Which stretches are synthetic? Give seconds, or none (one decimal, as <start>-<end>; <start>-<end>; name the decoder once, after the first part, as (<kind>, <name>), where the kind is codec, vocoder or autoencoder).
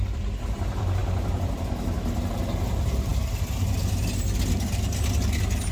0.0-3.1 (vocoder, BigVGAN v2)